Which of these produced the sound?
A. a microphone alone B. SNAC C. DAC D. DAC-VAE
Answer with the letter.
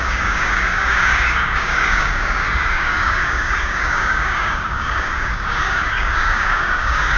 C